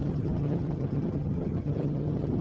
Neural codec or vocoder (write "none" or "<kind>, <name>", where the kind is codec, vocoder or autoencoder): vocoder, HiFi-GAN